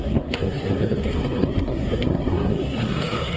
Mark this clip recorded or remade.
remade